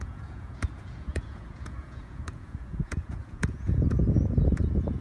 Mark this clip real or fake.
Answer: fake